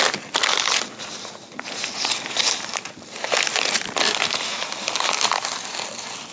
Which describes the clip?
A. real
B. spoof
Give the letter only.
A